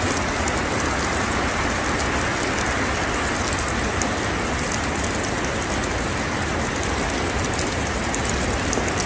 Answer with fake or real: real